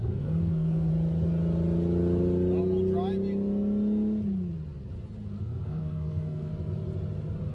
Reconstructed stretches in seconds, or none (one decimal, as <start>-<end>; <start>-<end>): 0.0-0.9; 5.4-6.5